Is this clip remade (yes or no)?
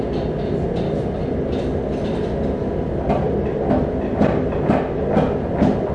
no